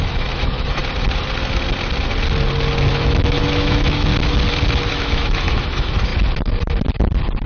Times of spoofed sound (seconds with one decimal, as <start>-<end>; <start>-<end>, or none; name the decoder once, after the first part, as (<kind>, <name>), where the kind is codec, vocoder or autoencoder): 0.0-0.8 (autoencoder, DAC-VAE); 2.9-4.1; 4.9-6.1

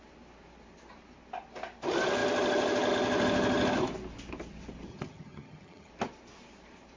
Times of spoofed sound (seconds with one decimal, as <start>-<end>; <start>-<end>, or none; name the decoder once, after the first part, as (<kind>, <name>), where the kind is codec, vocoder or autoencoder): 4.9-5.9 (vocoder, HiFi-GAN)